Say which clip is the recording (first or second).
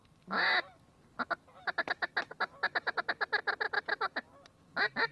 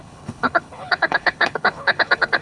first